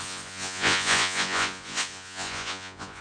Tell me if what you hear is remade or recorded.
remade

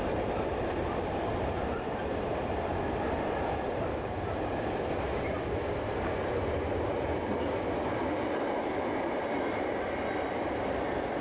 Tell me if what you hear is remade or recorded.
recorded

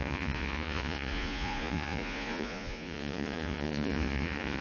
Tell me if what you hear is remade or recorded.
remade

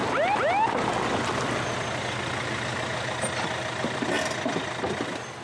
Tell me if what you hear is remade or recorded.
recorded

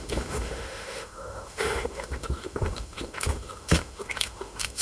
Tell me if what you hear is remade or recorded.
remade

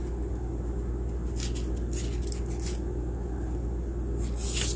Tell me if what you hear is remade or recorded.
recorded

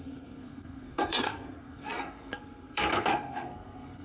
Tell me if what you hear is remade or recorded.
remade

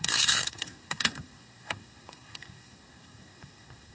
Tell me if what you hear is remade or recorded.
remade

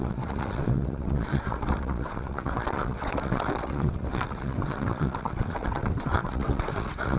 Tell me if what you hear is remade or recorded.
remade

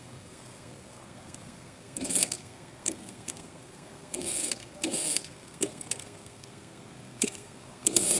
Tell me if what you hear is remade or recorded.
remade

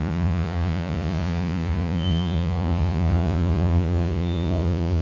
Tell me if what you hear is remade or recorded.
remade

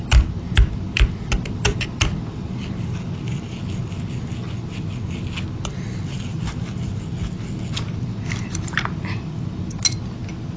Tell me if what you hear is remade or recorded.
recorded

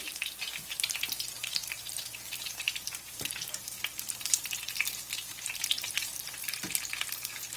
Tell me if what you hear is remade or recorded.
remade